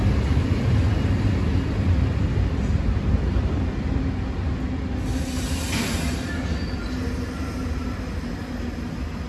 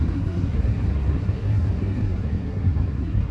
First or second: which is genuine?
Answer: first